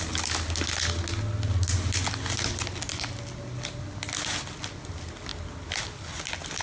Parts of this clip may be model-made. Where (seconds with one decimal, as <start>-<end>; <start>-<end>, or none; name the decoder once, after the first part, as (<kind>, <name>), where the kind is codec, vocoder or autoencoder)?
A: none